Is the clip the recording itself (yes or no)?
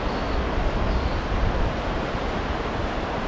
yes